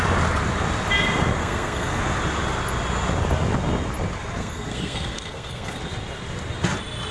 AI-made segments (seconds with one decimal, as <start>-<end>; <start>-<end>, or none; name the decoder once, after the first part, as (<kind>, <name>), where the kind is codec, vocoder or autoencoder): 1.4-2.0 (codec, SNAC); 4.4-5.8